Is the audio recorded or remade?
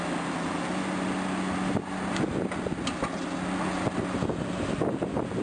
recorded